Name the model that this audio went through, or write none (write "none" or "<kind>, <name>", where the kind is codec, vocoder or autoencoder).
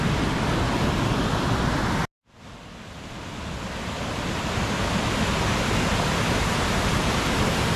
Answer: none